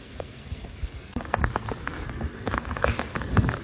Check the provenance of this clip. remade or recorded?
remade